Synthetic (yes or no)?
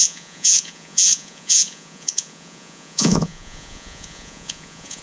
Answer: yes